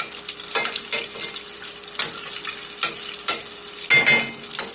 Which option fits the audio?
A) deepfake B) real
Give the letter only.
B